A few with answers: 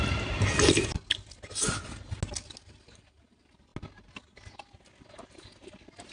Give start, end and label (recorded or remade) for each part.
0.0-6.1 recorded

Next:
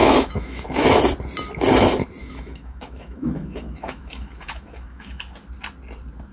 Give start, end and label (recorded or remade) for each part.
0.0-1.0 remade; 1.0-2.2 recorded; 2.2-5.2 remade; 5.2-6.3 recorded

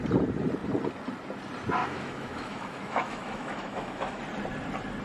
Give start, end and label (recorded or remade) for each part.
0.0-1.8 recorded; 1.8-4.2 remade; 4.2-5.0 recorded